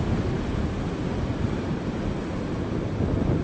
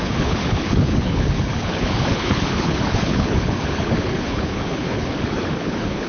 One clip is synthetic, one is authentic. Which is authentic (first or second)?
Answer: first